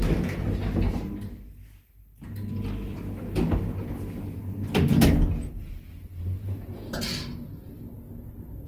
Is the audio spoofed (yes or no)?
no